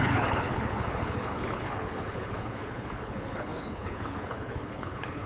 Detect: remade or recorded remade